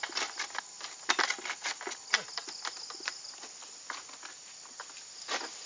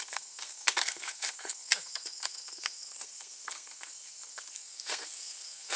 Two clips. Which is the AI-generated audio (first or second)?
second